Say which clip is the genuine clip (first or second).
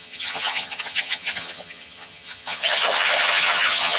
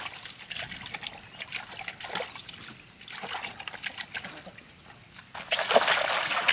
second